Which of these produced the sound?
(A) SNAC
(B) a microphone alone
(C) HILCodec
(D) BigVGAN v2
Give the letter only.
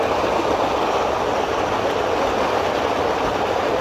B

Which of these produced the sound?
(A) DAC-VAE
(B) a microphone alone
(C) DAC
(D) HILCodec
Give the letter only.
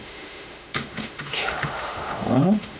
A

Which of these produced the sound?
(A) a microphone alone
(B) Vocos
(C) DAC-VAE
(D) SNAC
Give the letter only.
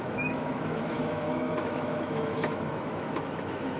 C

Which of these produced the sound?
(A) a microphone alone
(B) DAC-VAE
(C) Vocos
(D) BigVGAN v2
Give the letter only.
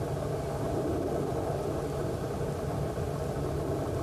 A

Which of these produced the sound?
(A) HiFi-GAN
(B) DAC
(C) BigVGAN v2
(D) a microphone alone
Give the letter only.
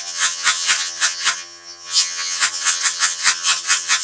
A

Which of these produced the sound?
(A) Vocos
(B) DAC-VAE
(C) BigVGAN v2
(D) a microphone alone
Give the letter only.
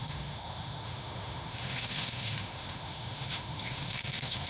B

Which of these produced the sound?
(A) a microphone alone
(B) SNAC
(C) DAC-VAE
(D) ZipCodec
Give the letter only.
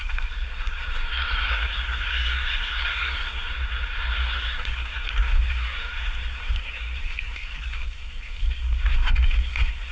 B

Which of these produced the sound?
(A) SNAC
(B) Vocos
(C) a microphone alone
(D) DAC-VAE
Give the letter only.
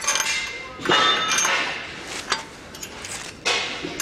C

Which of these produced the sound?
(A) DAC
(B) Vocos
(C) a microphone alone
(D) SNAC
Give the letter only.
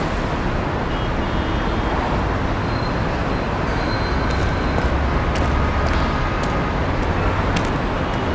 C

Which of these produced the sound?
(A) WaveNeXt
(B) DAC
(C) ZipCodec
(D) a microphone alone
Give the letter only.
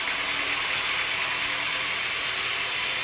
D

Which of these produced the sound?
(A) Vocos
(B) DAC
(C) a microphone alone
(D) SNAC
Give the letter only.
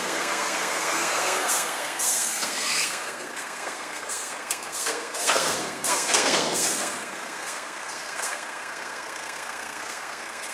D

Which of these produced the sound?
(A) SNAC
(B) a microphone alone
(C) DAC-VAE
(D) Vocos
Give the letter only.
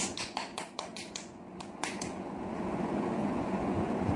D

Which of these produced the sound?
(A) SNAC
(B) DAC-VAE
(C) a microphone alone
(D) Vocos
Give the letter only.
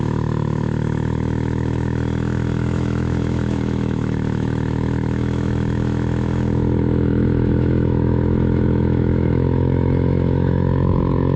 B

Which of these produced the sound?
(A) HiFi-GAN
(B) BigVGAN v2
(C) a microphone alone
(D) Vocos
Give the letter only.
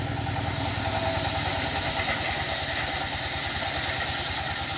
C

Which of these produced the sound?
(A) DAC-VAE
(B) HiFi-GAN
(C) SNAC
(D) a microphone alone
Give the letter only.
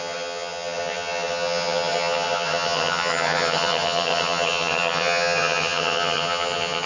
B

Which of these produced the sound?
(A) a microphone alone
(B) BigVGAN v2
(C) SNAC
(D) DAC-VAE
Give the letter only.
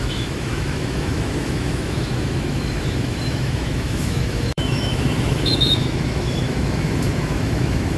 D